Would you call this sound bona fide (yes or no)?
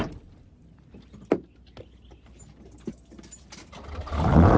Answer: yes